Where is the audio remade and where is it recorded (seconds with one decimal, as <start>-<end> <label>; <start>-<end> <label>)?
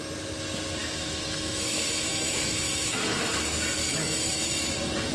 0.0-0.8 recorded; 0.8-3.2 remade; 3.2-3.8 recorded; 3.8-4.6 remade; 4.6-5.1 recorded